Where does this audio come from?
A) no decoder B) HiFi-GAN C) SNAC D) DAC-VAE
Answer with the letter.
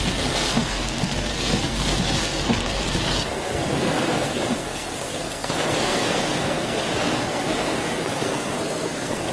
C